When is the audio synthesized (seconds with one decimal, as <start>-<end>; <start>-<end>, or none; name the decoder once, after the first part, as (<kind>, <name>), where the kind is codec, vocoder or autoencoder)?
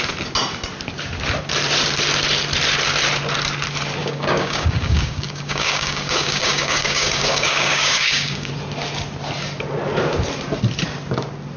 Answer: 4.0-8.5 (codec, DAC)